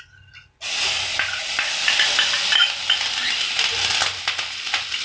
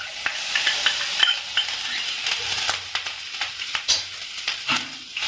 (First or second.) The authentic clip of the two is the first